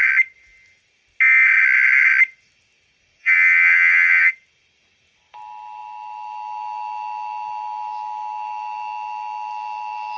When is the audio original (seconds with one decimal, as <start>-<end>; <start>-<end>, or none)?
0.0-3.2; 4.3-10.2